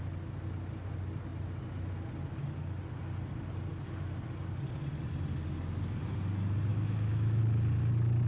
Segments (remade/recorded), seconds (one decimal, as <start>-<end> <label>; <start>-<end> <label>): 0.0-6.7 recorded; 6.7-7.4 remade; 7.4-8.3 recorded

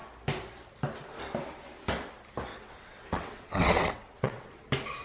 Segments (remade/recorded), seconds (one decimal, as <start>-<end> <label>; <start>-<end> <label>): 0.0-2.5 recorded; 2.5-4.6 remade; 4.6-5.0 recorded

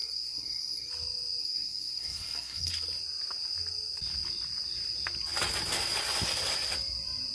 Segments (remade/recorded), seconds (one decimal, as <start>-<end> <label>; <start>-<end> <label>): 0.0-0.9 remade; 0.9-1.4 recorded; 1.4-2.7 remade; 2.7-7.3 recorded

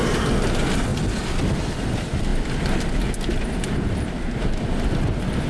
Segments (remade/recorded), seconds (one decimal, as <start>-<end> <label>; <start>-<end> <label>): 0.0-5.5 recorded

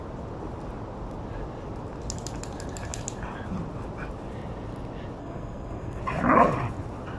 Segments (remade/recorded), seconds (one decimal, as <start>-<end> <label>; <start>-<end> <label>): 0.0-5.2 recorded; 5.2-6.0 remade; 6.0-7.2 recorded

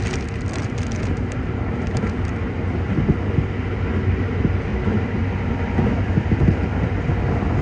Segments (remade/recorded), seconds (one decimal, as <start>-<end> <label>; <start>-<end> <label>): 0.0-4.7 recorded; 4.7-5.7 remade; 5.7-7.6 recorded

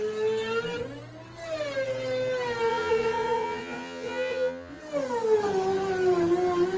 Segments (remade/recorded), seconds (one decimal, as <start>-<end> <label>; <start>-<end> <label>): 0.0-2.7 recorded; 2.7-4.8 remade; 4.8-6.8 recorded

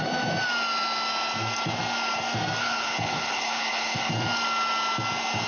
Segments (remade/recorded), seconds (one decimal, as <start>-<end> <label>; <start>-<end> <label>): 0.0-2.6 recorded; 2.6-4.1 remade; 4.1-5.5 recorded